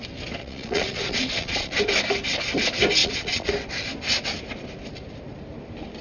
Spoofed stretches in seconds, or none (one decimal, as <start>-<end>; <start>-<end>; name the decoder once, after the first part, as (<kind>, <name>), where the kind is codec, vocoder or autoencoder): 0.4-1.8 (vocoder, Vocos); 3.0-3.5